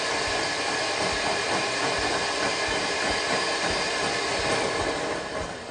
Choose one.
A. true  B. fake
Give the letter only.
A